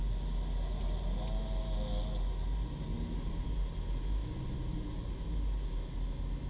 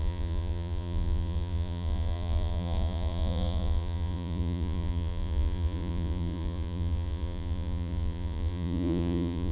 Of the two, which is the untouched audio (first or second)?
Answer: first